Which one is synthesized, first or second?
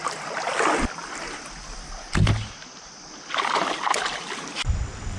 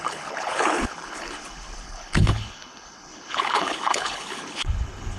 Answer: second